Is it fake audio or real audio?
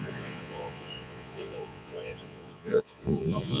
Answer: fake